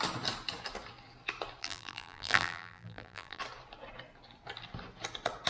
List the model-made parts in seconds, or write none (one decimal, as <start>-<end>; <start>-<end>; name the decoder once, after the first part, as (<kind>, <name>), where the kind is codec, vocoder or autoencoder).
1.6-3.4 (vocoder, BigVGAN v2)